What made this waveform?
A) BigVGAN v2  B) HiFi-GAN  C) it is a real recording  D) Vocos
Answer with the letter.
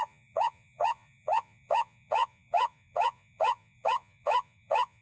D